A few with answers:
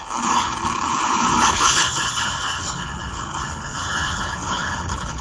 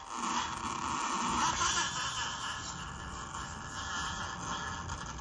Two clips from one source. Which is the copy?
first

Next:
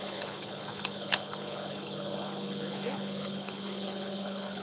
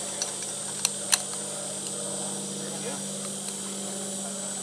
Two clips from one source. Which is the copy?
first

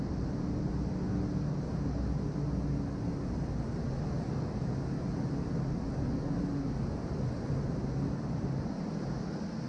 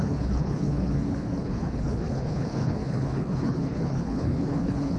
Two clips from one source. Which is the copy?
second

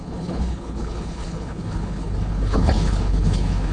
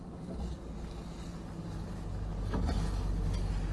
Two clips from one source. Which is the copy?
first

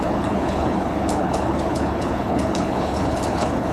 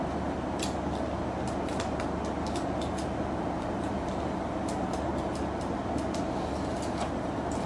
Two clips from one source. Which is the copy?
first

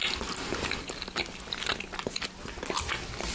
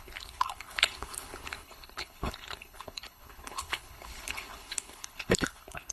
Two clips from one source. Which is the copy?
second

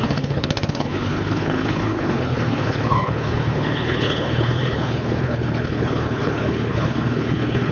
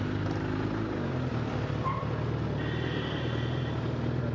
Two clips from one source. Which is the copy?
first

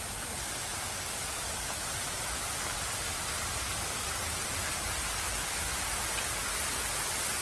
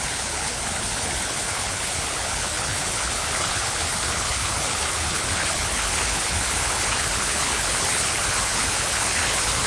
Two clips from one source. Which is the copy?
second